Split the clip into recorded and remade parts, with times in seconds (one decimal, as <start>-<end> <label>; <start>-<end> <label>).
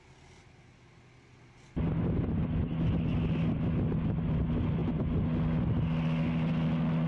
0.0-7.1 recorded